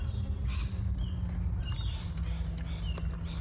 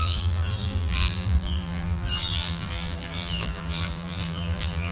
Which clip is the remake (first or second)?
second